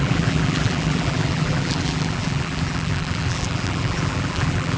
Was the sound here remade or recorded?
remade